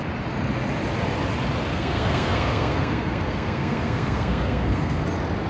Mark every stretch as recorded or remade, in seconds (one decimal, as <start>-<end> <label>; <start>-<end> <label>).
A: 0.0-1.7 recorded; 1.7-5.0 remade; 5.0-5.5 recorded